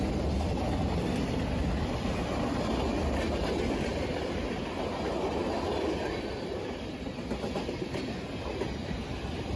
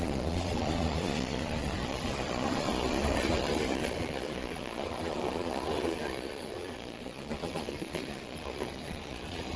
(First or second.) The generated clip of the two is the second